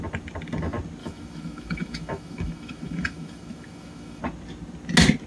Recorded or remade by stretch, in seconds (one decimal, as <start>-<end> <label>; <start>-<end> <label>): 0.0-1.0 recorded; 1.0-4.2 remade; 4.2-5.3 recorded